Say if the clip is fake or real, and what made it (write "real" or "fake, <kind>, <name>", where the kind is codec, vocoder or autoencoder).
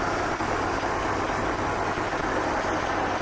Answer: real